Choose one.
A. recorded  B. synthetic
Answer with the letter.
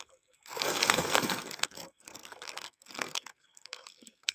B